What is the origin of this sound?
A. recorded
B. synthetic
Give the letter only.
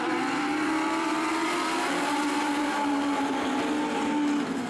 A